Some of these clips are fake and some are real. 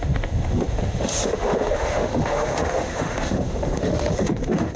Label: fake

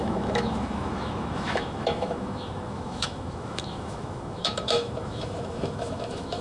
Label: fake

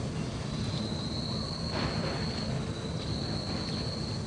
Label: real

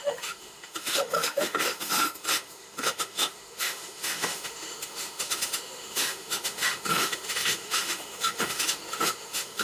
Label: fake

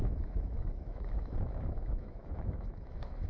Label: fake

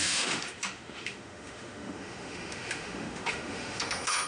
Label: fake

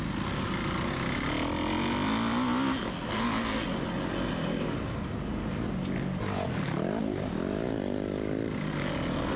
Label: real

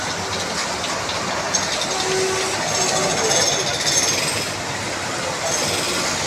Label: real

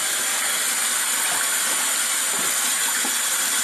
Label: real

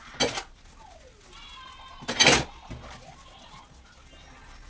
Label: real